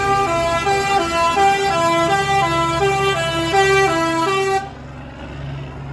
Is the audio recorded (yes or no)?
yes